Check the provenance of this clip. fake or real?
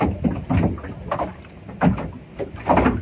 real